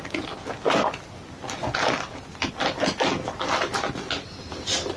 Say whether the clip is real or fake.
real